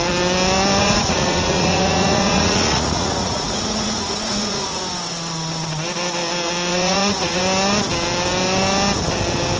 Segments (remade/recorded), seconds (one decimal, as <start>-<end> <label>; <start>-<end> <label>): 0.0-0.8 recorded; 0.8-4.8 remade; 4.8-6.7 recorded; 6.7-7.4 remade; 7.4-9.6 recorded